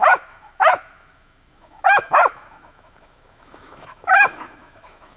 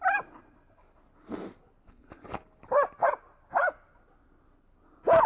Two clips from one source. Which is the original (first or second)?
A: second